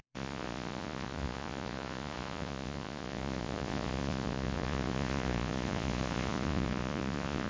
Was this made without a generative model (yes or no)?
no